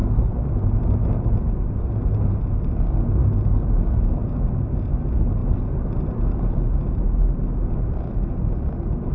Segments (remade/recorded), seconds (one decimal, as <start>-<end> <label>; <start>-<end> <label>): 0.0-5.4 recorded; 5.4-6.4 remade; 6.4-9.1 recorded